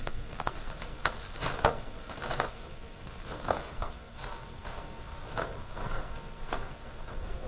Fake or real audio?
fake